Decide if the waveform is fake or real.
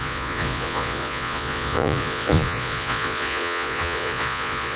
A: fake